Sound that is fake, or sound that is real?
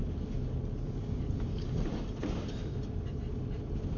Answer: real